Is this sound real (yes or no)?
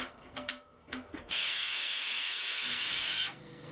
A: no